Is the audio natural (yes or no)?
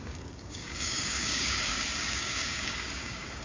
no